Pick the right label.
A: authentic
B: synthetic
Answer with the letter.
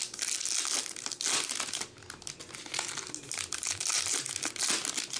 A